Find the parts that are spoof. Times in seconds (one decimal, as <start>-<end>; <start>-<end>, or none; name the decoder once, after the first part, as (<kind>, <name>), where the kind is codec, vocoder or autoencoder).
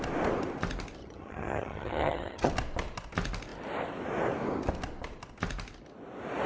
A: 1.0-2.5 (vocoder, HiFi-GAN)